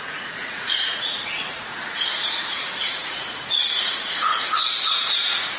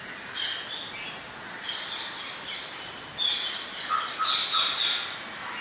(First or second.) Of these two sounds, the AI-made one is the first